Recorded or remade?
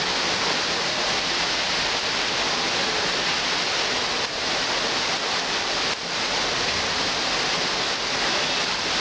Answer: remade